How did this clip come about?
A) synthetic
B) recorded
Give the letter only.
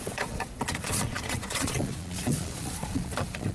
A